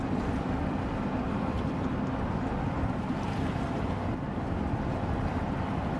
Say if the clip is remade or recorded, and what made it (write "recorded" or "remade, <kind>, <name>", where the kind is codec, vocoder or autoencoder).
recorded